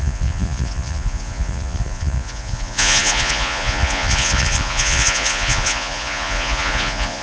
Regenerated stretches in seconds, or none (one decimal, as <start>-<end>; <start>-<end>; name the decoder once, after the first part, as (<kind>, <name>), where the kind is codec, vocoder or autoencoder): 0.0-7.2 (vocoder, Vocos)